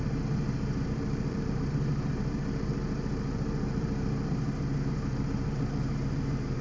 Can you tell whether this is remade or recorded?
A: remade